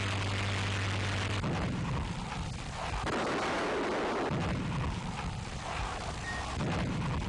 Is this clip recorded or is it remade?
recorded